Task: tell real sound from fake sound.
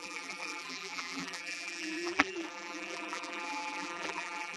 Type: fake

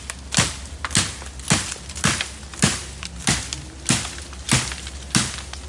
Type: real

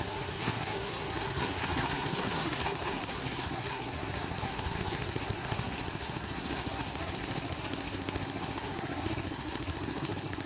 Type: fake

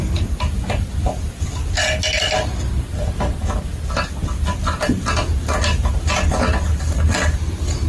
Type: real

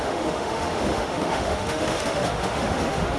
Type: fake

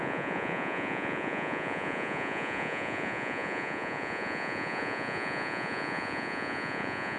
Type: fake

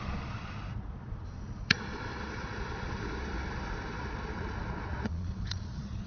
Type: fake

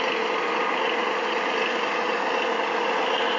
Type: real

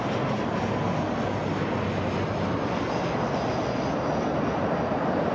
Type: real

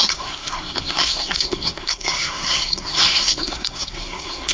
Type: fake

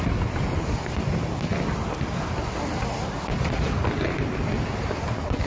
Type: real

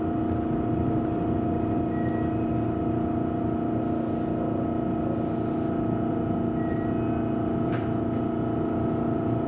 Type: real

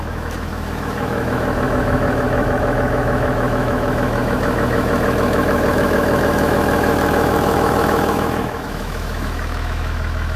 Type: fake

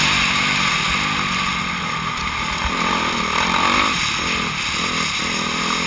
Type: real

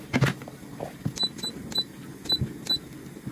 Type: real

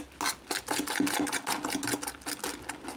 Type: real